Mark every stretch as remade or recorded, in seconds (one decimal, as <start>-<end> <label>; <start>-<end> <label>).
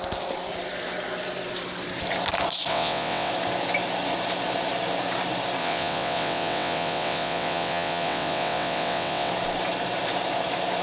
0.0-2.7 recorded; 2.7-3.3 remade; 3.3-5.6 recorded; 5.6-9.3 remade; 9.3-10.8 recorded